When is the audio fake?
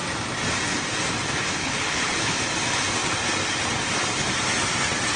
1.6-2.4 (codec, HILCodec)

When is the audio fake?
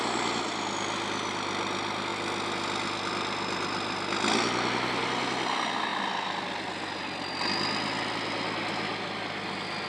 none